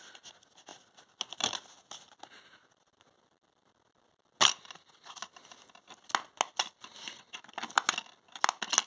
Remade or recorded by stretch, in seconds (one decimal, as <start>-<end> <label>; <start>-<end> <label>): 0.0-8.9 recorded

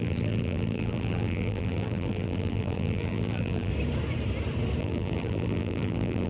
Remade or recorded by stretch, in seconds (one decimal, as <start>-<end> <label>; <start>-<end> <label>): 0.0-3.7 remade; 3.7-4.8 recorded; 4.8-6.3 remade

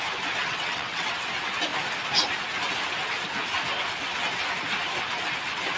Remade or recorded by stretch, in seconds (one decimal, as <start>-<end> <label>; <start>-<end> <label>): 0.0-0.4 recorded; 0.4-1.1 remade; 1.1-5.8 recorded

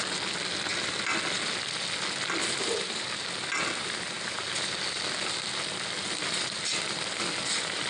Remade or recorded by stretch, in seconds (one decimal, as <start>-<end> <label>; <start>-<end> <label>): 0.0-7.9 recorded

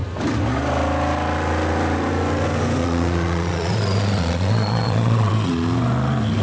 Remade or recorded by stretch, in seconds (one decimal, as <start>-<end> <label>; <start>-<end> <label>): 0.0-2.8 recorded; 2.8-5.5 remade; 5.5-6.4 recorded

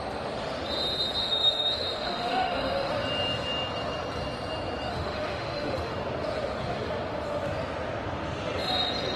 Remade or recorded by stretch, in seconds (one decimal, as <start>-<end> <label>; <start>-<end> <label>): 0.0-1.2 recorded; 1.2-2.9 remade; 2.9-4.9 recorded; 4.9-5.9 remade; 5.9-9.2 recorded

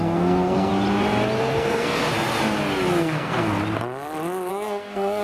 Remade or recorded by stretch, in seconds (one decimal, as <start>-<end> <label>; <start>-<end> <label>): 0.0-0.7 remade; 0.7-1.4 recorded; 1.4-2.0 remade; 2.0-3.0 recorded; 3.0-3.5 remade; 3.5-4.5 recorded; 4.5-5.2 remade